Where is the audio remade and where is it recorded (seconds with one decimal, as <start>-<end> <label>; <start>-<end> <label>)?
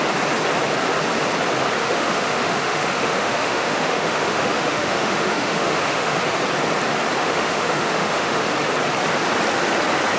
0.0-1.8 recorded; 1.8-6.2 remade; 6.2-7.2 recorded; 7.2-8.4 remade; 8.4-10.2 recorded